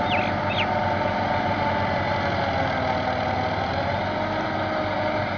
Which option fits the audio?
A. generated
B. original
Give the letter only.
B